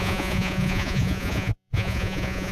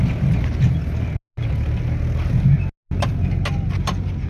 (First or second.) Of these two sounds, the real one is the second